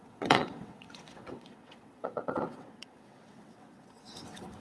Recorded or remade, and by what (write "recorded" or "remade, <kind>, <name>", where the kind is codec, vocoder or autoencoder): remade, vocoder, WaveNeXt